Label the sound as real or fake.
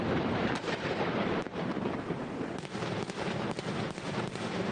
fake